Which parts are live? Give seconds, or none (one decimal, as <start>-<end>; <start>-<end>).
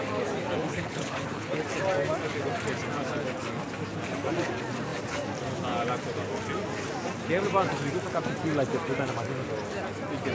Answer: 0.0-0.6; 1.6-10.3